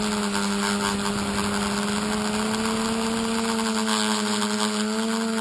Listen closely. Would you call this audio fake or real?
real